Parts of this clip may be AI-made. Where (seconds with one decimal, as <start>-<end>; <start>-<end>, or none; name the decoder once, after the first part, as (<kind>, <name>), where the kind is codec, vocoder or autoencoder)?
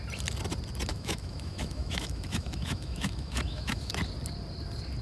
0.9-3.9 (autoencoder, DAC-VAE)